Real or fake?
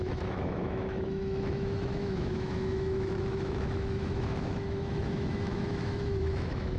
fake